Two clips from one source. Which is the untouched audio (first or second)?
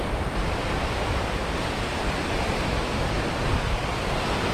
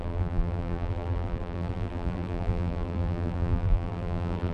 first